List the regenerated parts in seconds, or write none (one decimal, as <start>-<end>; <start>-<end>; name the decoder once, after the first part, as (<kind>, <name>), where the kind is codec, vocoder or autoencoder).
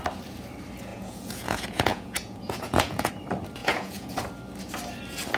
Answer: 0.9-3.1 (vocoder, Vocos); 3.6-4.2